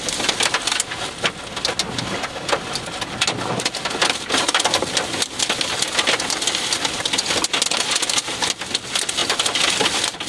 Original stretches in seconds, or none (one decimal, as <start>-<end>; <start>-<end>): 0.0-10.3